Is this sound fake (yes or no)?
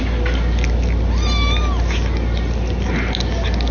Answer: no